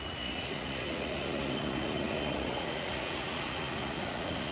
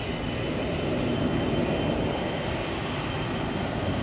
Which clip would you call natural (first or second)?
second